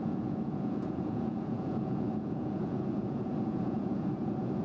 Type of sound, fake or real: fake